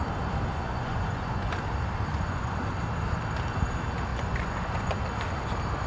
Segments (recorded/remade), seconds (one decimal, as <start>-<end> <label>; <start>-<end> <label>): 0.0-0.5 recorded; 0.5-1.6 remade; 1.6-2.1 recorded; 2.1-2.8 remade; 2.8-4.1 recorded; 4.1-5.0 remade; 5.0-5.9 recorded